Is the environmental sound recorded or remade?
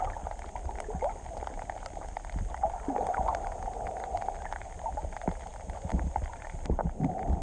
recorded